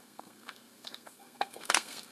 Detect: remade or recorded remade